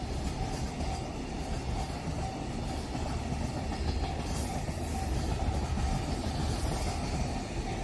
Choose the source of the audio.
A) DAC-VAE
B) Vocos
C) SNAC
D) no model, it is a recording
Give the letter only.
D